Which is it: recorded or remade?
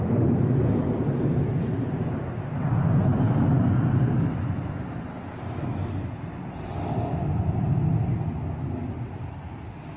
recorded